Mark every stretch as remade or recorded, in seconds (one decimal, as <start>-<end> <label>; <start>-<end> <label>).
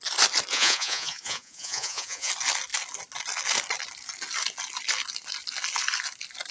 0.0-0.5 recorded; 0.5-2.3 remade; 2.3-6.5 recorded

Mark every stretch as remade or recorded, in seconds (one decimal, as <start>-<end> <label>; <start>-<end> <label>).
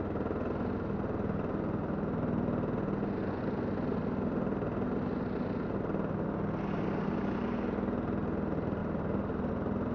0.0-9.9 recorded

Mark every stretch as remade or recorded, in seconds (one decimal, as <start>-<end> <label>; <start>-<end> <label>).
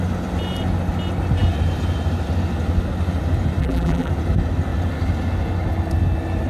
0.0-3.6 recorded; 3.6-4.1 remade; 4.1-6.5 recorded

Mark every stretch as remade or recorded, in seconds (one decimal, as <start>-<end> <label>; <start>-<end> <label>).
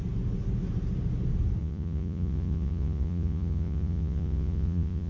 0.0-1.6 recorded; 1.6-5.1 remade